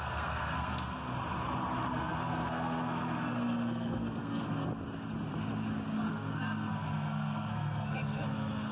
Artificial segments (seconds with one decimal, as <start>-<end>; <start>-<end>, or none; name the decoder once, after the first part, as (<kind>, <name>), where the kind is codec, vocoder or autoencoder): 0.0-1.1 (codec, SNAC); 1.9-4.7; 6.1-8.7